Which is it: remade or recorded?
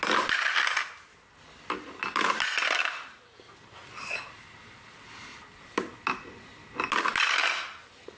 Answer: recorded